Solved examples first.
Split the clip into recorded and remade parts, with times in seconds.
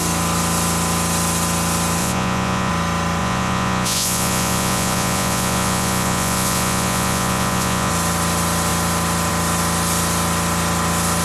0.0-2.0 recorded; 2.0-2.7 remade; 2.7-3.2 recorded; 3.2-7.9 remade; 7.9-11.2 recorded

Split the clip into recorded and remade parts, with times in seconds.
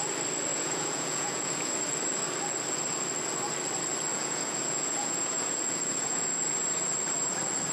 0.0-0.5 recorded; 0.5-1.7 remade; 1.7-4.1 recorded; 4.1-6.5 remade; 6.5-7.7 recorded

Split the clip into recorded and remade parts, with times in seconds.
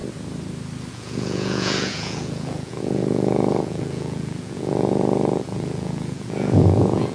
0.0-0.9 recorded; 0.9-7.1 remade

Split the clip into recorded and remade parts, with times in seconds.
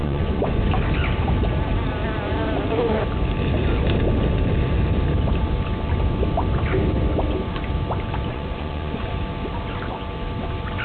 0.0-0.6 remade; 0.6-8.3 recorded; 8.3-9.1 remade; 9.1-10.8 recorded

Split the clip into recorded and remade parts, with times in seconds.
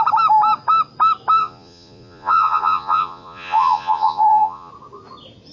0.0-1.4 recorded; 1.4-4.7 remade; 4.7-5.5 recorded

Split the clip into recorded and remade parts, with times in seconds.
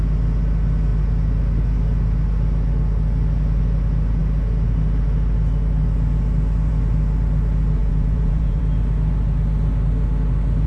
0.0-7.8 recorded; 7.8-8.6 remade; 8.6-10.7 recorded